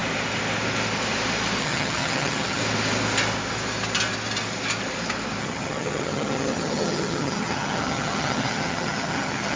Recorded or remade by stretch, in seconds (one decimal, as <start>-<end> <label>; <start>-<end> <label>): 0.0-1.6 recorded; 1.6-2.6 remade; 2.6-5.4 recorded; 5.4-9.6 remade